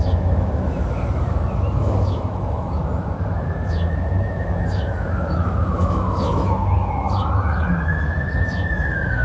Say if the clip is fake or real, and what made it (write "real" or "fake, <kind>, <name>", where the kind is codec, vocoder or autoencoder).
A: fake, autoencoder, DAC-VAE